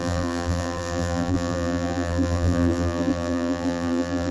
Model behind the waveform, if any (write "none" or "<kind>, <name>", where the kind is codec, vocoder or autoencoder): vocoder, BigVGAN v2